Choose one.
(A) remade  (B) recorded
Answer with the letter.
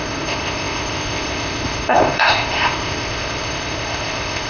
A